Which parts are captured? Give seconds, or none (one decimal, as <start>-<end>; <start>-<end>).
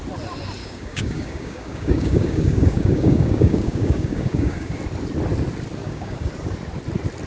0.0-0.6; 4.8-5.8; 6.3-7.3